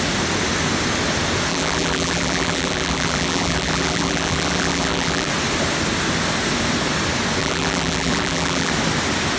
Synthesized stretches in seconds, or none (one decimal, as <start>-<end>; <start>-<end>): 1.5-5.3; 7.4-8.7